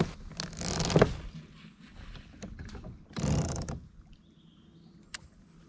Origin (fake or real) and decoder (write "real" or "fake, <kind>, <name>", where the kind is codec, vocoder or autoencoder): real